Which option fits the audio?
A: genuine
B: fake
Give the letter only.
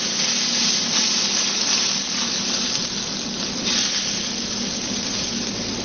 A